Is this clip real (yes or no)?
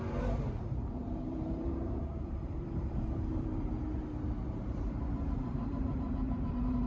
no